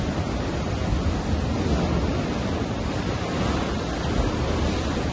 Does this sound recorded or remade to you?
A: recorded